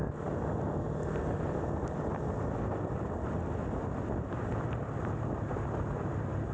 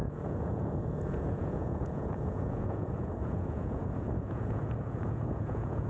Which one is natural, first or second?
first